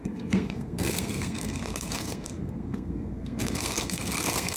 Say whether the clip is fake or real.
fake